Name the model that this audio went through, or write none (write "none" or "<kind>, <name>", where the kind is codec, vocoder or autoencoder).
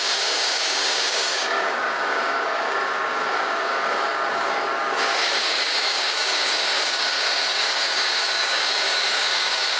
codec, DAC